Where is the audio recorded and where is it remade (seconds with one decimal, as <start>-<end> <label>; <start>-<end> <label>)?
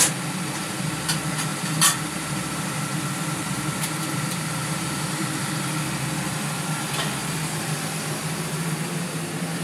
0.0-1.5 recorded; 1.5-5.5 remade; 5.5-7.2 recorded; 7.2-8.2 remade; 8.2-9.6 recorded